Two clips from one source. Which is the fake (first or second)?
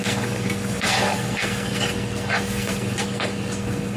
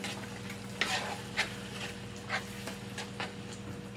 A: first